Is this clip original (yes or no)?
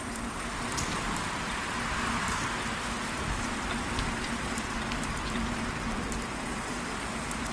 no